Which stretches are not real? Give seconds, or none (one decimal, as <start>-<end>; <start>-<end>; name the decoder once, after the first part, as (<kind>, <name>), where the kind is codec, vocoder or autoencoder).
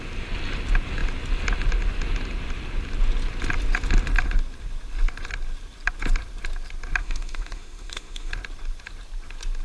7.0-8.3 (autoencoder, DAC-VAE)